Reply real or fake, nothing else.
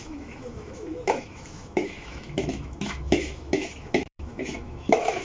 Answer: fake